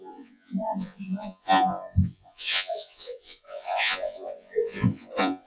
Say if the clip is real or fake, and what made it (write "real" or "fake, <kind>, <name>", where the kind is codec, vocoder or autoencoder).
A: fake, vocoder, Vocos